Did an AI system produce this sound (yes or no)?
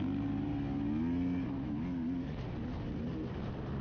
no